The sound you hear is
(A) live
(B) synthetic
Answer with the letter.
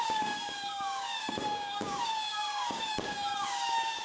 B